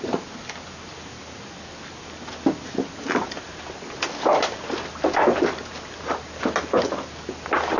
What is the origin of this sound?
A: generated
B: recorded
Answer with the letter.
B